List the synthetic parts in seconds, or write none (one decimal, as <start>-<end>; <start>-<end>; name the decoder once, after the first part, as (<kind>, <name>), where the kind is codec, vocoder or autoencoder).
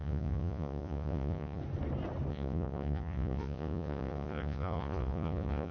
0.0-1.6 (vocoder, Vocos); 2.3-5.7